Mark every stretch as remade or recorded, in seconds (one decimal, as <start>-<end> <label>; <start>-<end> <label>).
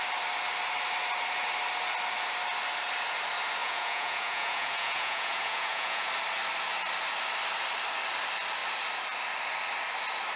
0.0-3.6 recorded; 3.6-6.1 remade; 6.1-10.4 recorded